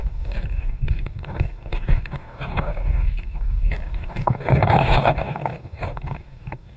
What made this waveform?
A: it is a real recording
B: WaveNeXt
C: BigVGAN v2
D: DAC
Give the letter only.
D